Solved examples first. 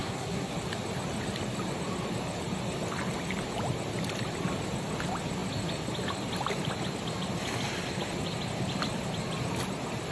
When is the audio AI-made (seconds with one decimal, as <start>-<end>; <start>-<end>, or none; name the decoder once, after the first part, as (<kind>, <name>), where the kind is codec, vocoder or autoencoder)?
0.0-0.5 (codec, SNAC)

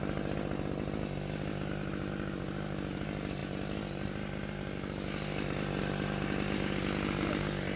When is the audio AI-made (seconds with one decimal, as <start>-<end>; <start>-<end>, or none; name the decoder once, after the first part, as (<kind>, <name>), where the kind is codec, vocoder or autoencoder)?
none

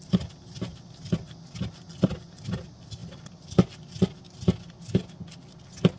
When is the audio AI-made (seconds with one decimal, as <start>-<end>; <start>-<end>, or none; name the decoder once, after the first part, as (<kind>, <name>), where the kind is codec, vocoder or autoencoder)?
none